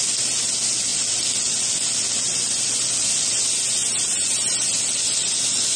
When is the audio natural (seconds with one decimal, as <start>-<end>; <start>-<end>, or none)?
0.0-5.8